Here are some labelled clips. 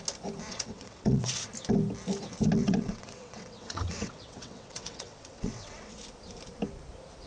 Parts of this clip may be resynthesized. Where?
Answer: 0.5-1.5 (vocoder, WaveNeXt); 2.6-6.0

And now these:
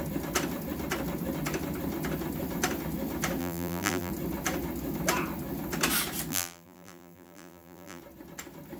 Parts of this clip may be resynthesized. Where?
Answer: 3.4-4.1 (vocoder, BigVGAN v2); 6.3-8.0

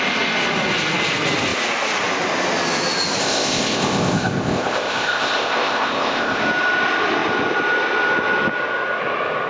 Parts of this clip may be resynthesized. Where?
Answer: 3.2-6.4 (codec, ZipCodec)

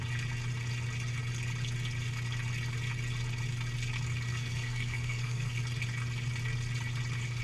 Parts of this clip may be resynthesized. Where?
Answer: 4.3-5.6 (codec, SNAC)

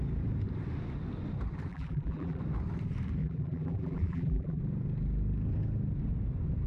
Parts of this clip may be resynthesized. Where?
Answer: 1.7-2.4 (vocoder, BigVGAN v2); 3.2-4.6